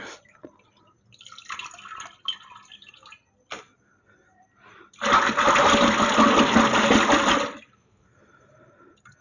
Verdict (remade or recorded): recorded